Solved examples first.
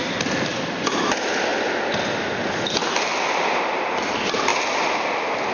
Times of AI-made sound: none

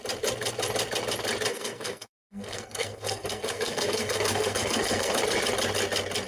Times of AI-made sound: 1.5-5.2 (codec, SNAC)

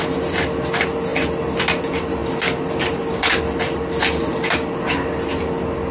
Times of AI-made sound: none

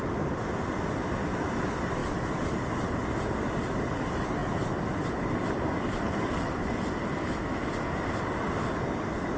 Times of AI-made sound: 7.2-7.7 (autoencoder, DAC-VAE)

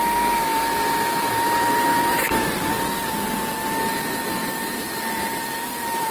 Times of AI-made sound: 1.9-2.6 (vocoder, BigVGAN v2); 4.4-6.1

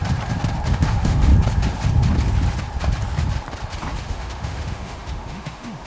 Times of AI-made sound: 0.7-1.3 (autoencoder, DAC-VAE); 4.1-5.9

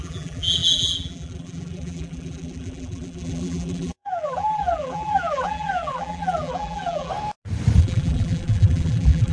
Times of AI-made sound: 0.0-7.1 (vocoder, BigVGAN v2); 7.8-9.3

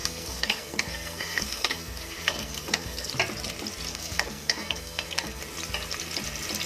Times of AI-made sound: 0.0-3.1 (codec, SNAC); 3.9-5.4